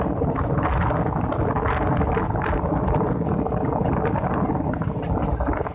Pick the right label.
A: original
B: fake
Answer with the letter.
A